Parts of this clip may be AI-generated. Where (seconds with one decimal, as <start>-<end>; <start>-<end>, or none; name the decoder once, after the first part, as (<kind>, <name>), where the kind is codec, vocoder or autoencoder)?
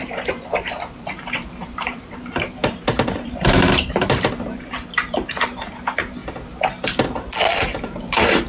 0.0-6.2 (vocoder, BigVGAN v2); 7.6-8.5